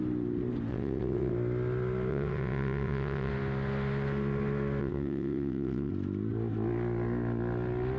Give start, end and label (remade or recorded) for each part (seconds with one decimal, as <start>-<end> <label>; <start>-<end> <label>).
0.0-0.7 recorded; 0.7-1.3 remade; 1.3-2.1 recorded; 2.1-3.3 remade; 3.3-4.8 recorded; 4.8-5.9 remade; 5.9-8.0 recorded